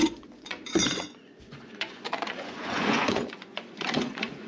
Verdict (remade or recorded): remade